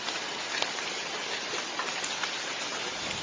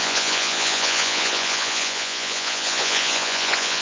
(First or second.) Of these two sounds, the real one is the first